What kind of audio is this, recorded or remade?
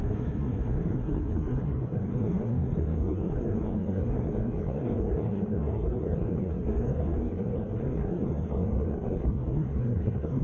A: remade